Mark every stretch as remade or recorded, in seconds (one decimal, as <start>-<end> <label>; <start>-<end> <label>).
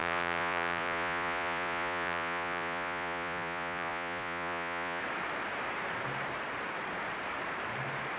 0.0-5.0 remade; 5.0-8.2 recorded